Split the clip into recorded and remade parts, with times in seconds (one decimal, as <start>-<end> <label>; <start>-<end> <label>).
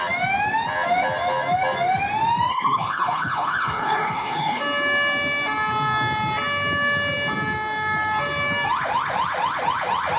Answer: 0.0-2.5 recorded; 2.5-4.6 remade; 4.6-10.2 recorded